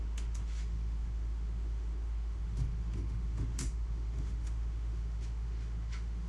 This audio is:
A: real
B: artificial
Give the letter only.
B